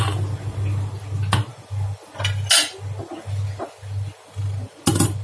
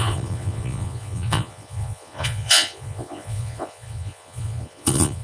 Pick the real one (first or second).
first